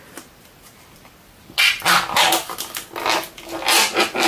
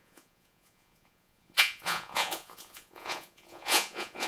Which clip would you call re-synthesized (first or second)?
second